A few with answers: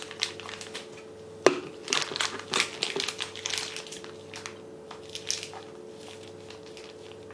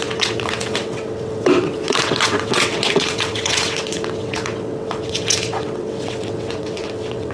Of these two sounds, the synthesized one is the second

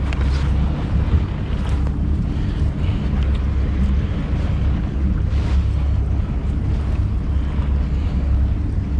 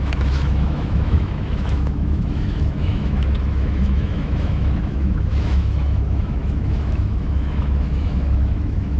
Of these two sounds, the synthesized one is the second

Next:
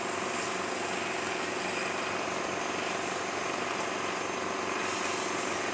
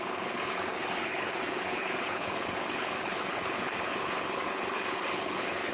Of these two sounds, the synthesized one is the second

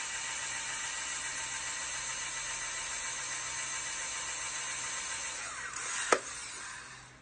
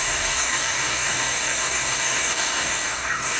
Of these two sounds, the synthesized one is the second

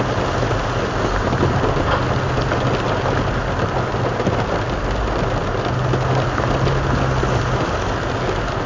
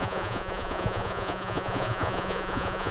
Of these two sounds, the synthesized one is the second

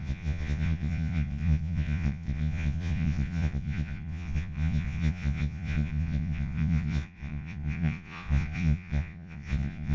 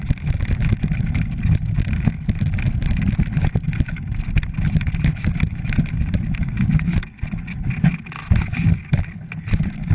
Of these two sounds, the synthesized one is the first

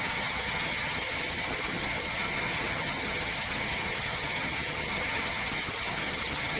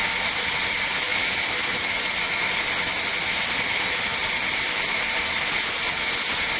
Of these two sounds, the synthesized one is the first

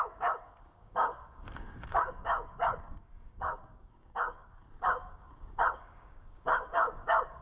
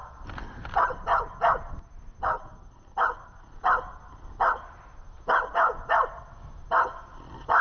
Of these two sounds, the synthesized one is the first